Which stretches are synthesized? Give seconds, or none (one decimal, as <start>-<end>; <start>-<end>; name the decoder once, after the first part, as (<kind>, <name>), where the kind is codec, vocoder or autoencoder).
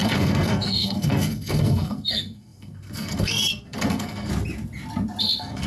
0.0-4.3 (codec, SNAC); 5.2-5.7